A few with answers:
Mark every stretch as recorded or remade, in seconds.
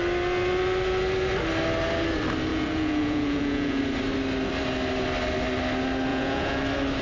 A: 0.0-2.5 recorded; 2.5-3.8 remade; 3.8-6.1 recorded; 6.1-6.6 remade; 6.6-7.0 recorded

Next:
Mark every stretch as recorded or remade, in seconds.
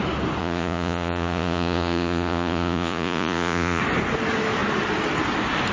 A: 0.0-0.4 recorded; 0.4-3.8 remade; 3.8-5.7 recorded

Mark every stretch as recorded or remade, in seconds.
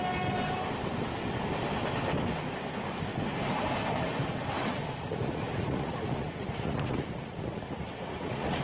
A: 0.0-4.6 recorded; 4.6-8.6 remade